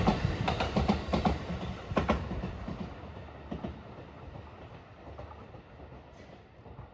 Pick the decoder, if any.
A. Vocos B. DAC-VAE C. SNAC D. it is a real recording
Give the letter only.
D